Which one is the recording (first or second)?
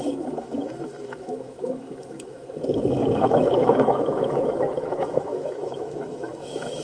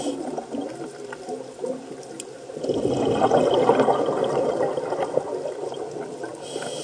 second